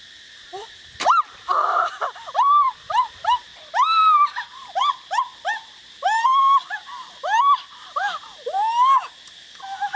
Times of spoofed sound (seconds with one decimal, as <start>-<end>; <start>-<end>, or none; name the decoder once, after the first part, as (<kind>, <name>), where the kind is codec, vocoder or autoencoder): 0.0-3.5 (vocoder, BigVGAN v2); 4.9-8.3